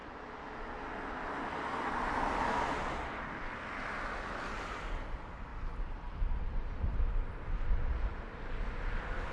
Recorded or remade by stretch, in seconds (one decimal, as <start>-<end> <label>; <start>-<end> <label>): 0.0-5.5 recorded; 5.5-7.5 remade; 7.5-9.3 recorded